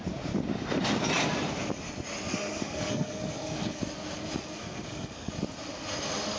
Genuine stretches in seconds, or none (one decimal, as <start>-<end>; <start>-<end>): 0.0-2.3; 3.8-4.4; 5.3-6.4